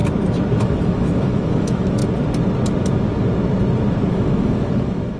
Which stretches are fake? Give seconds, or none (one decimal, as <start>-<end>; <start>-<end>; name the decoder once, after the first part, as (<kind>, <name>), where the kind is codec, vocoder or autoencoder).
0.6-2.0 (autoencoder, DAC-VAE); 4.1-5.2